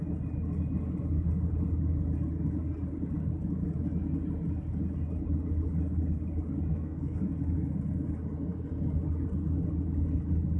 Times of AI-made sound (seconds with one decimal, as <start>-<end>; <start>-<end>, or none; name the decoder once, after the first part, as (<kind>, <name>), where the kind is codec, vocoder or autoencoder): 6.7-7.2 (codec, SNAC)